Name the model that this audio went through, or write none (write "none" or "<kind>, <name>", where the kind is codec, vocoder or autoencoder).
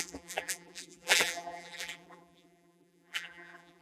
vocoder, BigVGAN v2